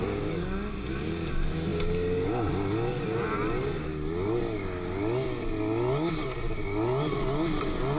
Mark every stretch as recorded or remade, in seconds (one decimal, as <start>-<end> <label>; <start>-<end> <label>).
0.0-8.0 recorded

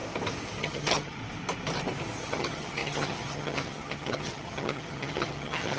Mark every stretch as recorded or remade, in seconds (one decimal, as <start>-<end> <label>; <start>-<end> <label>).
0.0-0.6 recorded; 0.6-1.2 remade; 1.2-2.2 recorded; 2.2-5.8 remade

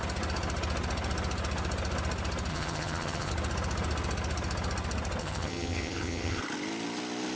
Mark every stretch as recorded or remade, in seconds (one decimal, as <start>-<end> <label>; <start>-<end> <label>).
0.0-2.5 recorded; 2.5-3.3 remade; 3.3-5.2 recorded; 5.2-6.4 remade; 6.4-7.4 recorded

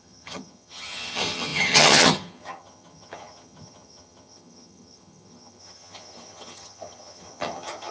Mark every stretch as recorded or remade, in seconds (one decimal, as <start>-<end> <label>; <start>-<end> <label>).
0.0-7.9 remade

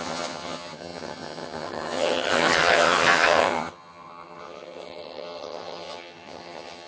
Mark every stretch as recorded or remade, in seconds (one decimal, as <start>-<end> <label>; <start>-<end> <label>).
0.0-6.9 remade

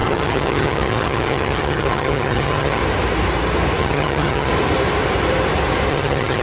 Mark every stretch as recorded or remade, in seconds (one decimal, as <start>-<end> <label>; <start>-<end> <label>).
0.0-2.8 remade; 2.8-3.8 recorded; 3.8-4.5 remade; 4.5-5.9 recorded; 5.9-6.4 remade